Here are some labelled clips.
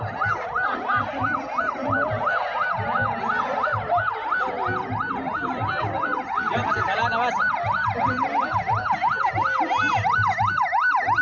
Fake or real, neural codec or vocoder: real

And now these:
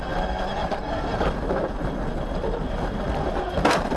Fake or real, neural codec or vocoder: real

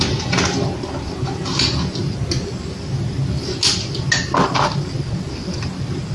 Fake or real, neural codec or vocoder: real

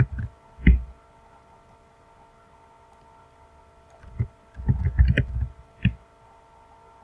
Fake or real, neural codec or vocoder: real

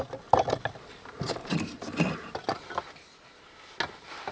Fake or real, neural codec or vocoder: real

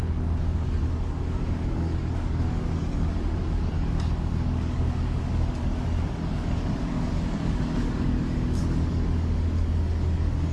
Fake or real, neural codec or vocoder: fake, codec, DAC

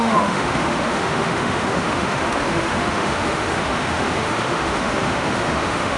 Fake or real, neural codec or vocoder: fake, autoencoder, DAC-VAE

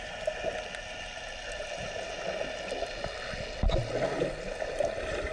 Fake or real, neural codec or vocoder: real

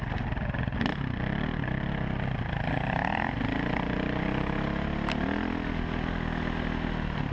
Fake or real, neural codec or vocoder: real